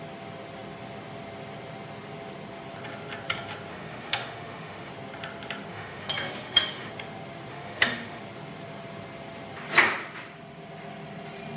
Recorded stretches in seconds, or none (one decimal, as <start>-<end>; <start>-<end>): 0.0-3.7; 4.9-5.7; 6.9-7.5; 8.2-11.6